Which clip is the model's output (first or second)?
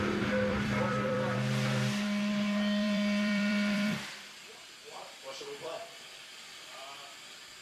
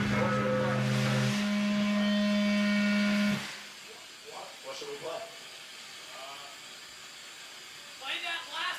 first